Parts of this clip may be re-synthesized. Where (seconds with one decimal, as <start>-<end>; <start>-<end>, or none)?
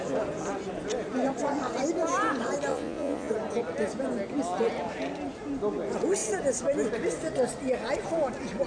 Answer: 2.7-3.3